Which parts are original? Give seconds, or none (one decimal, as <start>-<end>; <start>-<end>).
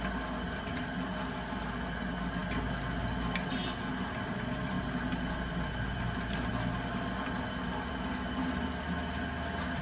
0.0-9.8